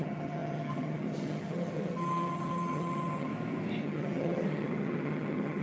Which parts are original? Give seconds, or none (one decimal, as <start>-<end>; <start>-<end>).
3.3-3.8